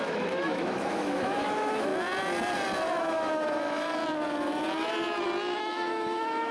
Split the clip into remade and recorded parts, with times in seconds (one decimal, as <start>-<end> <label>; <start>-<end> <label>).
0.0-1.9 remade; 1.9-3.0 recorded; 3.0-4.0 remade; 4.0-5.6 recorded; 5.6-6.5 remade